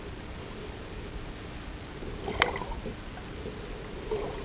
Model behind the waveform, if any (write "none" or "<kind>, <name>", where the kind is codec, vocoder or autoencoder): none